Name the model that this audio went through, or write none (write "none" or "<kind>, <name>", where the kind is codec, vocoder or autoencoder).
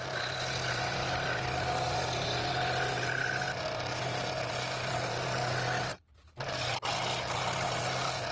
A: none